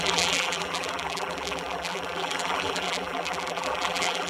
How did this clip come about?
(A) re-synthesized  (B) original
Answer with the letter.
A